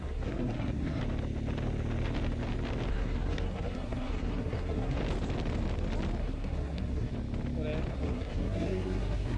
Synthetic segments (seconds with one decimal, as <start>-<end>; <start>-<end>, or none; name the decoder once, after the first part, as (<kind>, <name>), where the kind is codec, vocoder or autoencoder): 0.0-1.0 (codec, SNAC); 2.9-5.0; 6.2-7.1; 7.9-9.4